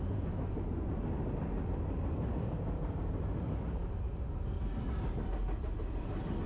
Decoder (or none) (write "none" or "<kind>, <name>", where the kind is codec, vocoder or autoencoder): none